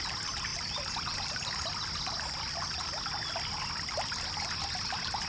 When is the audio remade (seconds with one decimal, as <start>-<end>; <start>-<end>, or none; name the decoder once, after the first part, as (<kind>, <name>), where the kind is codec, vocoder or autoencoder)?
none